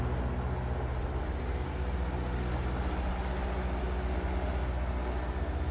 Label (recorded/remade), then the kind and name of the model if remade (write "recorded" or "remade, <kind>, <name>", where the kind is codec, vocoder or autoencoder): recorded